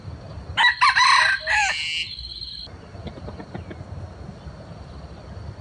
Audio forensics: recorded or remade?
recorded